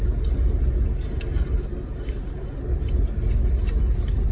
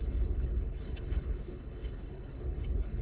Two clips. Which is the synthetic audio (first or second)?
second